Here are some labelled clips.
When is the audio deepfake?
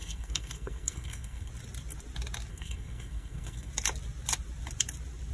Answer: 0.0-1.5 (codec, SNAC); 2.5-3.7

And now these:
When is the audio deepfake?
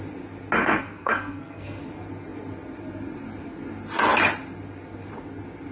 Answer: 0.6-1.8 (codec, SNAC)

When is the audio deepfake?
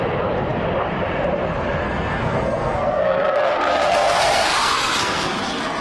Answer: 1.8-5.3 (codec, SNAC)